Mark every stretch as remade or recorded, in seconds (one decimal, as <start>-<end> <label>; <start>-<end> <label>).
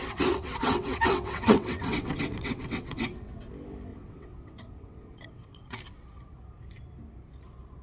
0.0-3.5 remade; 3.5-3.9 recorded; 3.9-5.8 remade; 5.8-7.8 recorded